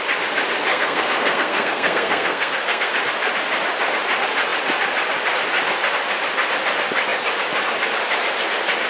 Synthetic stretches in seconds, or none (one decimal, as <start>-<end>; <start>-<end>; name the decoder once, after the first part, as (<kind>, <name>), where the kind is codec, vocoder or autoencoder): 0.7-2.9 (codec, SNAC)